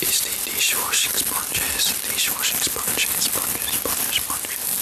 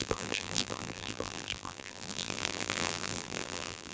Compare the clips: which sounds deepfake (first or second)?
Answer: second